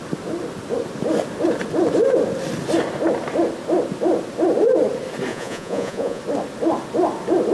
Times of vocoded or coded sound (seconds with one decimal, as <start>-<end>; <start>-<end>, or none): 5.3-6.2